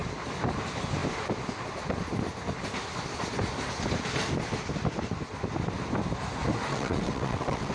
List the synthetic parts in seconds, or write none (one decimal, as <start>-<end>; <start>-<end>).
6.7-7.7